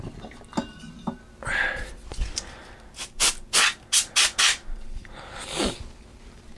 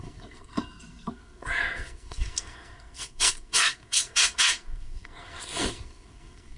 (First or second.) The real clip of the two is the first